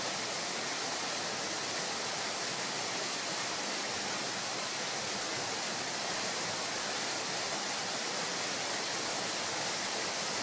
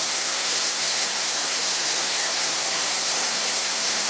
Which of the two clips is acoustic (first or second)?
first